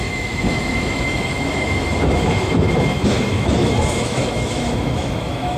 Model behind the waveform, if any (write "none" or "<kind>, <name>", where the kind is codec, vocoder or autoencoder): autoencoder, DAC-VAE